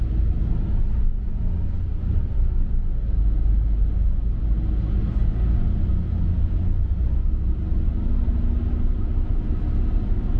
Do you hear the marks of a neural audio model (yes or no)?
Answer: no